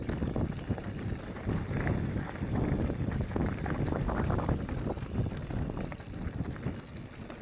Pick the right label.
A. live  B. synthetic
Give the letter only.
A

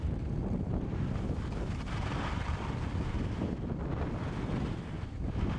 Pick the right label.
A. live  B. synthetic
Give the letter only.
A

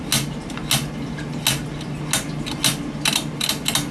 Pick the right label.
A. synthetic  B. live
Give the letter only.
B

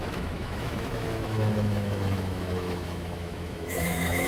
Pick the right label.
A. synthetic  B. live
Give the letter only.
A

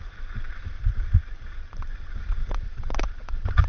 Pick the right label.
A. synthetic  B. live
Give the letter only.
A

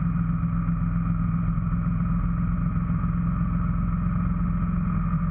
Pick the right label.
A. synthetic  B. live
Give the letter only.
B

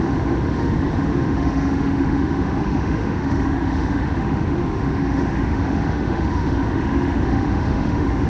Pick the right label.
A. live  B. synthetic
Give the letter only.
B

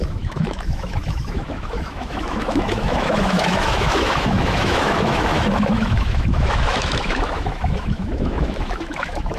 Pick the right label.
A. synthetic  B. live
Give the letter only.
A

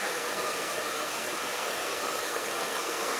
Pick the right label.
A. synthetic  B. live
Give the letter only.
A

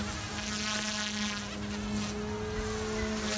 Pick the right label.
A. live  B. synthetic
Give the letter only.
A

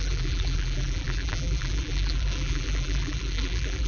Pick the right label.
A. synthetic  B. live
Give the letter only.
A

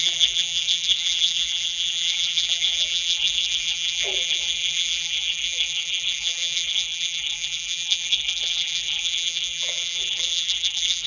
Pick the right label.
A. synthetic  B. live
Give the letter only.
A